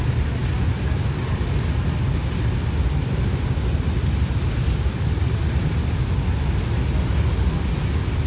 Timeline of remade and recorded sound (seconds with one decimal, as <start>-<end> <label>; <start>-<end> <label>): 0.0-8.3 recorded